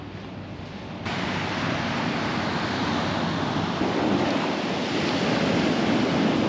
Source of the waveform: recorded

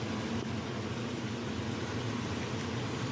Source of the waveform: recorded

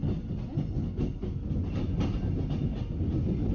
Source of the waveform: recorded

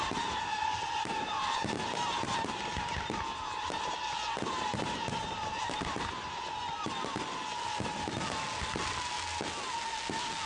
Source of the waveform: recorded